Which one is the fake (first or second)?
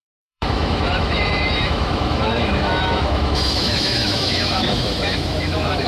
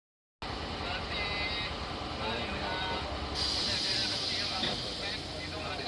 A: first